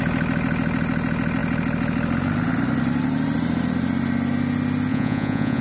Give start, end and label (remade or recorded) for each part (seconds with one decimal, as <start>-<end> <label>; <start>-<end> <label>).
0.0-4.9 recorded; 4.9-5.6 remade